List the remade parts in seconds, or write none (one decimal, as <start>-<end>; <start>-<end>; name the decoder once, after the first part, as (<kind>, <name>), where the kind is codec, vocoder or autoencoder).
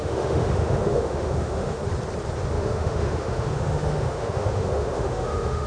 0.0-1.8 (autoencoder, DAC-VAE); 2.5-5.7